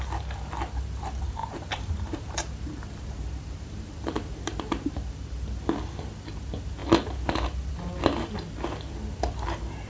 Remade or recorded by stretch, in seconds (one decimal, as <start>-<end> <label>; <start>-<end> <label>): 0.0-1.4 recorded; 1.4-5.1 remade; 5.1-9.9 recorded